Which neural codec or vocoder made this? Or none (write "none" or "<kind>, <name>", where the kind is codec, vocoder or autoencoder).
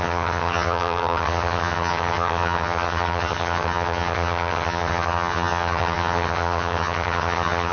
vocoder, HiFi-GAN